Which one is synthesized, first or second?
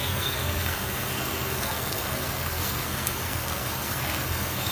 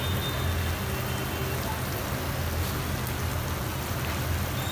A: first